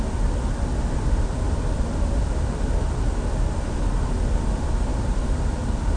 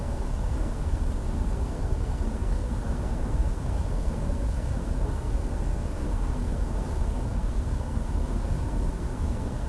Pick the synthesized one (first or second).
second